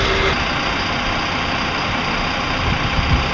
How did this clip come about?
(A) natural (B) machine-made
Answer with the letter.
A